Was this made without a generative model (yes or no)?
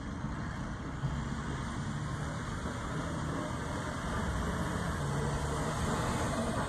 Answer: yes